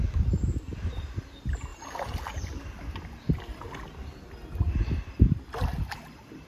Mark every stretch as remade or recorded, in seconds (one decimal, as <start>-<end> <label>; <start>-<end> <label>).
0.0-6.5 recorded